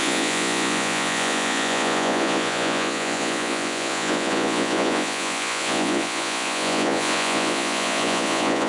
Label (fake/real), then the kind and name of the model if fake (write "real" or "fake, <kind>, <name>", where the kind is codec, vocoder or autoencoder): fake, vocoder, Vocos